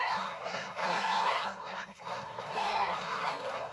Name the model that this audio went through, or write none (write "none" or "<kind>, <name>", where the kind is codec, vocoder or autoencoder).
codec, SNAC